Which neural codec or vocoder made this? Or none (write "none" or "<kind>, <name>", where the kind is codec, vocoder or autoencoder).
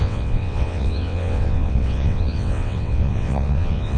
vocoder, WaveNeXt